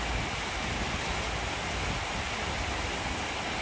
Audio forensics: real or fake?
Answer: real